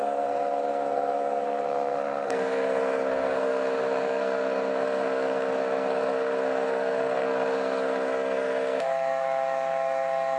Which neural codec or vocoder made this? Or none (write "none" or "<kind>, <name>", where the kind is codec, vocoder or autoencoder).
codec, SNAC